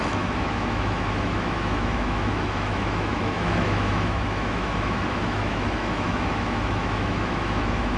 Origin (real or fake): fake